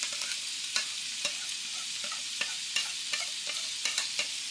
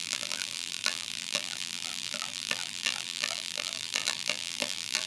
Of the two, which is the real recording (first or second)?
first